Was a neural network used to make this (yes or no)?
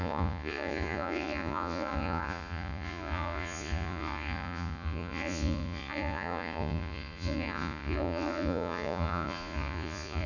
yes